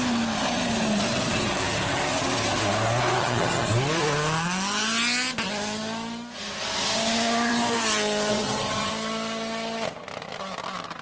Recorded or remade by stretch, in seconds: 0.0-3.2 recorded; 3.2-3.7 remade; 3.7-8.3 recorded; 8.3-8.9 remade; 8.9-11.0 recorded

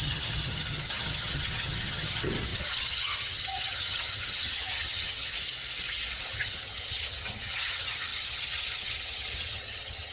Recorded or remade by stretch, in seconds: 0.0-5.3 remade; 5.3-6.2 recorded; 6.2-10.1 remade

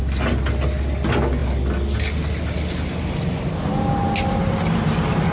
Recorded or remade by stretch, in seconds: 0.0-5.3 recorded

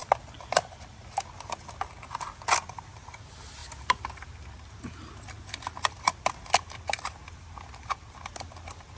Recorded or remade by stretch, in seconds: 0.0-9.0 recorded

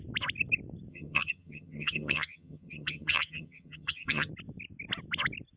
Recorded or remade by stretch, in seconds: 0.0-0.9 recorded; 0.9-4.3 remade; 4.3-5.6 recorded

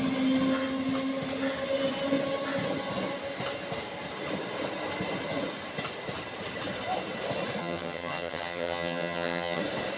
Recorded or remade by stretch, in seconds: 0.0-7.6 recorded; 7.6-9.6 remade; 9.6-10.0 recorded

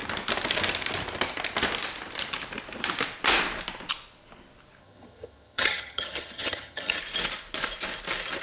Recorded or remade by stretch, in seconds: 0.0-4.8 recorded; 4.8-7.0 remade; 7.0-8.4 recorded

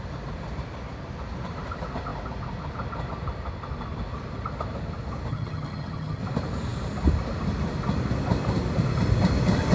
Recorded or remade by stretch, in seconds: 0.0-5.3 recorded; 5.3-6.2 remade; 6.2-9.7 recorded